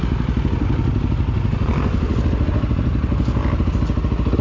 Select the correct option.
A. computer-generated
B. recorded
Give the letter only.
B